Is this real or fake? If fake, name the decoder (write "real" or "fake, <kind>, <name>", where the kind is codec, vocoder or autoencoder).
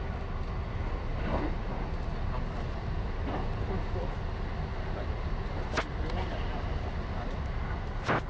real